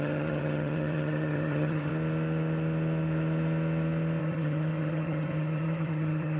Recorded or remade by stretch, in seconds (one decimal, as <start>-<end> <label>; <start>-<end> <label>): 0.0-1.9 remade; 1.9-4.2 recorded; 4.2-6.4 remade